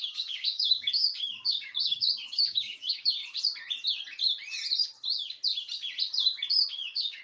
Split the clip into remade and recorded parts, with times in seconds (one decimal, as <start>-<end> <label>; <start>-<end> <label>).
0.0-3.2 remade; 3.2-6.7 recorded; 6.7-7.2 remade